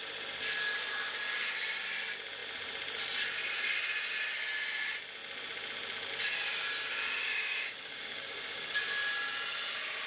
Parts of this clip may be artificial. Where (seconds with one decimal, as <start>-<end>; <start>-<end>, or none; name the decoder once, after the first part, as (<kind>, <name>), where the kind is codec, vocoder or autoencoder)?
7.3-8.8 (codec, DAC)